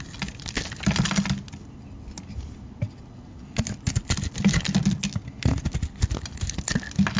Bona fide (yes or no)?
yes